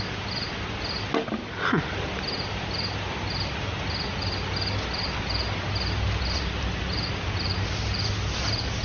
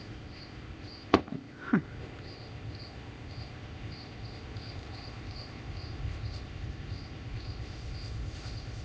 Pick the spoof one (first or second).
second